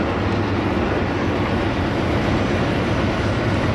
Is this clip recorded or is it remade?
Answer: recorded